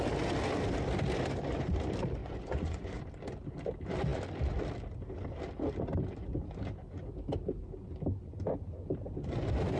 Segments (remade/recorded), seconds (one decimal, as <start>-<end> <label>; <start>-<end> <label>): 0.0-2.2 recorded; 2.2-3.0 remade; 3.0-9.8 recorded